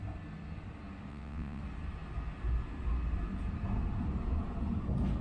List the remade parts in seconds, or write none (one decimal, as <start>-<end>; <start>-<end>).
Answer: 1.1-1.6